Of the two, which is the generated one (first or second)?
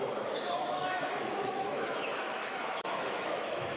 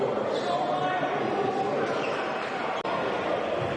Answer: first